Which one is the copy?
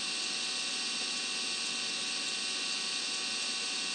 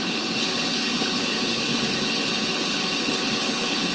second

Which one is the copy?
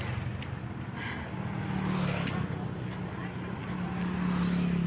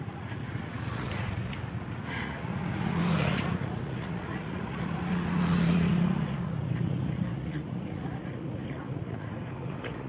second